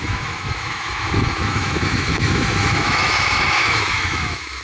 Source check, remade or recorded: remade